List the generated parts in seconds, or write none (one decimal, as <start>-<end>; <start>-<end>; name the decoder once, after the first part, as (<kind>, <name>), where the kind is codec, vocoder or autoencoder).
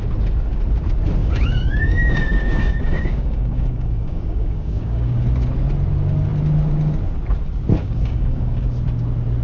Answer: 1.2-5.2 (codec, DAC); 7.8-8.6